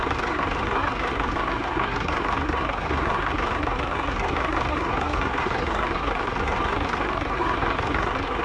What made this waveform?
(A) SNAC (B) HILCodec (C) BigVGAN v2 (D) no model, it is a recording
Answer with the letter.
A